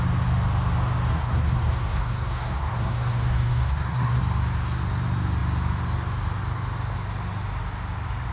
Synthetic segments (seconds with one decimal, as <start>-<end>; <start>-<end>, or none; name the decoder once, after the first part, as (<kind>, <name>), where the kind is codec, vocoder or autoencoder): 1.1-4.2 (codec, SNAC)